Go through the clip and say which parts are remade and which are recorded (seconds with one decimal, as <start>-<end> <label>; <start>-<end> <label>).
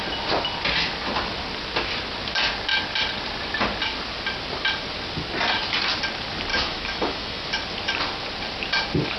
0.0-6.5 recorded; 6.5-7.5 remade; 7.5-9.2 recorded